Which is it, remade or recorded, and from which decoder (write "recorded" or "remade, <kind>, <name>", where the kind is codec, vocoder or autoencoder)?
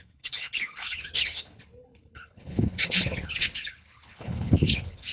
remade, codec, HILCodec